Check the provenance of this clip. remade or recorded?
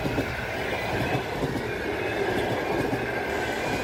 recorded